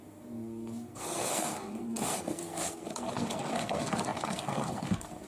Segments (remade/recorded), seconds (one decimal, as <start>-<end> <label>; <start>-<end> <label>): 0.0-5.3 remade